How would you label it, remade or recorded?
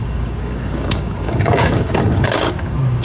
remade